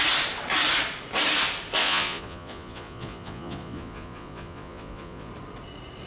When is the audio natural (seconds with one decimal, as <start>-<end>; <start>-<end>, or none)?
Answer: 0.0-1.8; 5.3-6.1

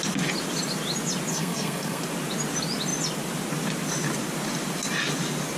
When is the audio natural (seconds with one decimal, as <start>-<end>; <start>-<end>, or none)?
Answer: 0.0-1.3; 2.0-5.6

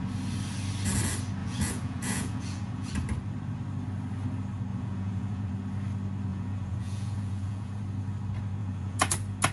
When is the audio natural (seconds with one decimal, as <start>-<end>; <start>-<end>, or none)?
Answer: 0.0-1.4; 2.9-4.7; 5.5-6.3; 7.8-8.6; 9.1-9.5

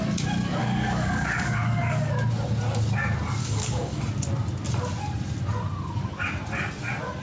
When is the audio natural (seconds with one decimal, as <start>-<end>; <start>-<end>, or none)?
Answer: 0.0-0.6; 2.1-3.4; 4.0-7.2

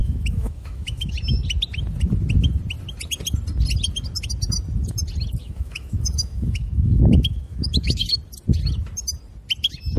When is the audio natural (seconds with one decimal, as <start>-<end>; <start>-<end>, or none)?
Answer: 1.1-5.4; 8.1-10.0

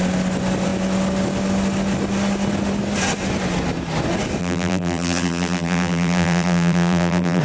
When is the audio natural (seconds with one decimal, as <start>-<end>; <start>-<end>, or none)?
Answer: 0.0-4.4

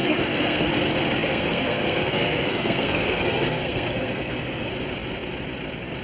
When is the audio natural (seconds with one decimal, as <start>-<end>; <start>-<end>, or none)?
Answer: 0.7-1.3; 4.7-6.0